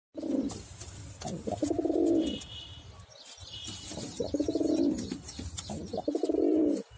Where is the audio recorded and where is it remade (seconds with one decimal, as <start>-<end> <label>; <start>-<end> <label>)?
0.0-7.0 recorded

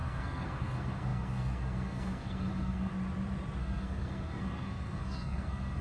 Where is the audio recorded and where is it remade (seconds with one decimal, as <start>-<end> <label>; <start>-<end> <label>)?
0.0-2.9 remade; 2.9-3.6 recorded; 3.6-5.8 remade

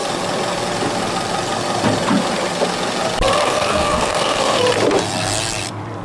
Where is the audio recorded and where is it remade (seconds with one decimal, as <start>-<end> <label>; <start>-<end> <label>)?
0.0-3.4 recorded; 3.4-4.6 remade; 4.6-6.0 recorded

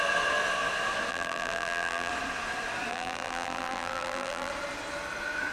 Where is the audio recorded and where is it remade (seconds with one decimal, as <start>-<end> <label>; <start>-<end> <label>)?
0.0-1.1 recorded; 1.1-2.1 remade; 2.1-2.9 recorded; 2.9-4.5 remade; 4.5-5.5 recorded

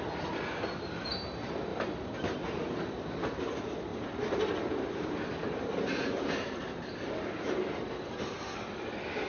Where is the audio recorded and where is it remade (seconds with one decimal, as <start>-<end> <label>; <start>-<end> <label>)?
0.0-1.7 recorded; 1.7-2.8 remade; 2.8-3.9 recorded; 3.9-8.1 remade; 8.1-9.3 recorded

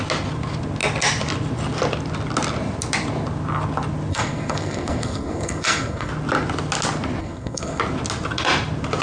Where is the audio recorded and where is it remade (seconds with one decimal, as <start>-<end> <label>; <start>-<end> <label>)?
0.0-4.1 recorded; 4.1-6.1 remade; 6.1-7.2 recorded; 7.2-7.8 remade; 7.8-9.0 recorded